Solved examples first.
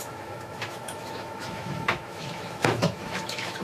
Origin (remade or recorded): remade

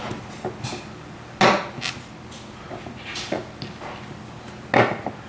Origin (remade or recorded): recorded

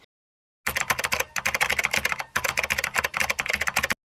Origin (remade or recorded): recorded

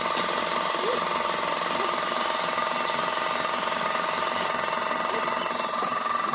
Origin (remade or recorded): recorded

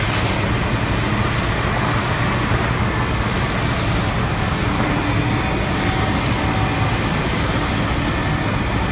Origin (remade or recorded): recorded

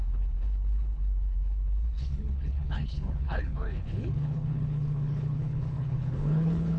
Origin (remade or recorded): remade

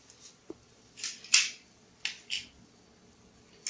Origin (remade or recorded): recorded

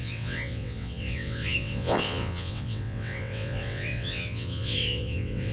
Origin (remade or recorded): remade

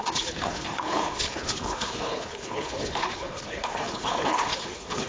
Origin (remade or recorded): remade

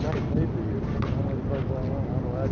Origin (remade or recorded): recorded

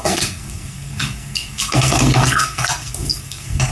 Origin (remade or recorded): remade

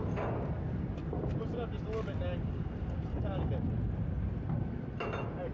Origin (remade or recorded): recorded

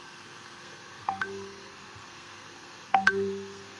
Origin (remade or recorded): remade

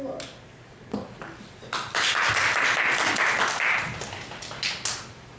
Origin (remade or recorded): recorded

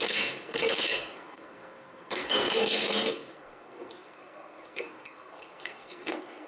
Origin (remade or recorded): remade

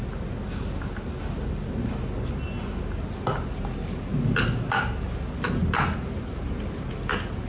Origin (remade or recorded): recorded